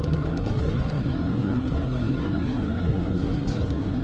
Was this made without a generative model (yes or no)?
no